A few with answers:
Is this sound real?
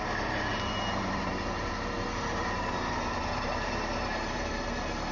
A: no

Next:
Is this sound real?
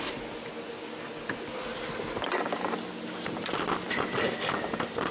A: yes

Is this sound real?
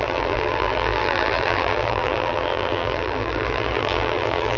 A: no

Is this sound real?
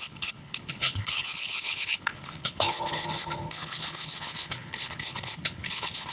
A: no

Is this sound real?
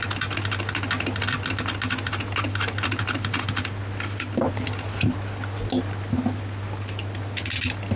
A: yes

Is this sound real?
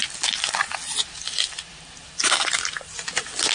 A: yes